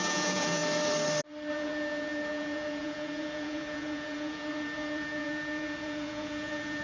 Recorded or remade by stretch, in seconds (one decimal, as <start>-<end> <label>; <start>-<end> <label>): 0.0-0.6 remade; 0.6-1.5 recorded; 1.5-6.8 remade